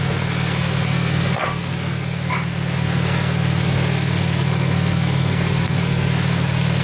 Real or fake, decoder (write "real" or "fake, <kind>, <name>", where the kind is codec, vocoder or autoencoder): fake, codec, SNAC